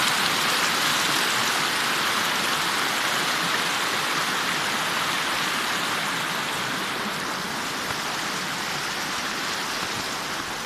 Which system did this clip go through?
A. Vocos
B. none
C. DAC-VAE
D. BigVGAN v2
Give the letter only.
B